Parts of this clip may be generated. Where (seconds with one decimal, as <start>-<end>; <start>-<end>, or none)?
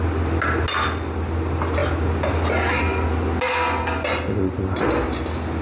none